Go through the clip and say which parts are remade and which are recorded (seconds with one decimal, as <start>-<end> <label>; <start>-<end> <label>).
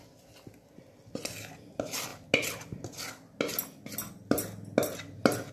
0.0-5.5 recorded